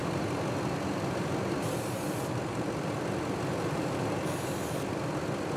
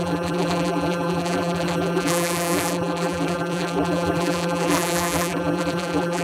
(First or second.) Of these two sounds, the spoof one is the second